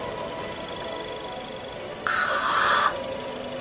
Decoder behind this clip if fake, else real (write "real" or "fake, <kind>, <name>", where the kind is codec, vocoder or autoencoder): real